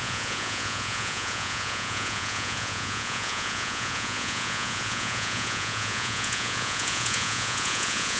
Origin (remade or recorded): remade